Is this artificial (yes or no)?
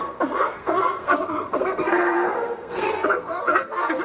yes